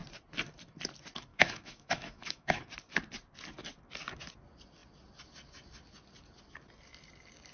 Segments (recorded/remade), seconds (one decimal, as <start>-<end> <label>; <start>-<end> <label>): 0.0-1.3 recorded; 1.3-2.6 remade; 2.6-7.5 recorded